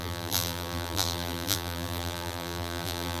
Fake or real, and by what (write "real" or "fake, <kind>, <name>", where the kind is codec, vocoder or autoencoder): fake, vocoder, BigVGAN v2